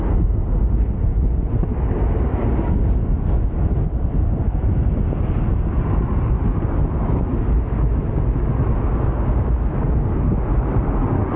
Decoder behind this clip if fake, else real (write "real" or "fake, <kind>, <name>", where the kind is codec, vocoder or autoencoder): real